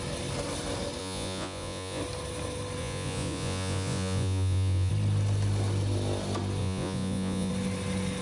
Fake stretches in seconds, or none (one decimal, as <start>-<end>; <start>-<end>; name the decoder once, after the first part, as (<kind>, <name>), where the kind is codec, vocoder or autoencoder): 1.0-2.0 (vocoder, Vocos); 2.8-4.9; 6.6-7.5